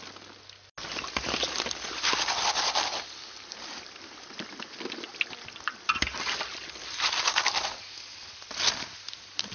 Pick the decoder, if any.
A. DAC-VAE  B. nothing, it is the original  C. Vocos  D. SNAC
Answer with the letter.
B